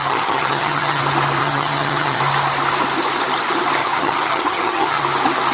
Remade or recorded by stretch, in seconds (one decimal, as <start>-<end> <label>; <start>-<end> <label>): 0.0-1.0 remade; 1.0-1.4 recorded; 1.4-2.2 remade; 2.2-3.8 recorded; 3.8-5.0 remade; 5.0-5.5 recorded